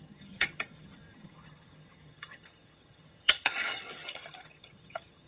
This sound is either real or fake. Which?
fake